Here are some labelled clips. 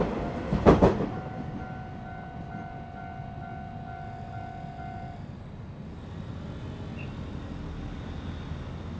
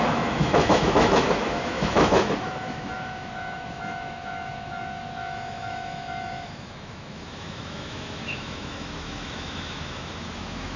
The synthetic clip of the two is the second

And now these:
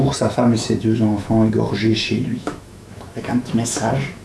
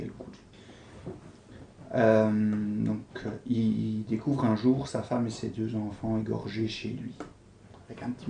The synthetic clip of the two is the first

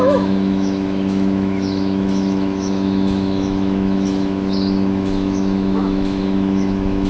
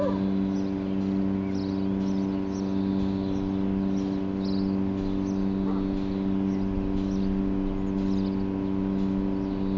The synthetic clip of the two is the first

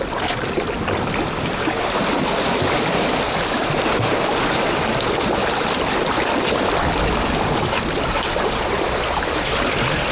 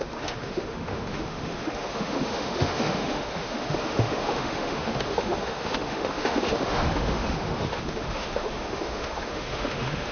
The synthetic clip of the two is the second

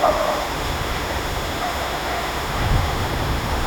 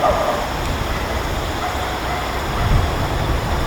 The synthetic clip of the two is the first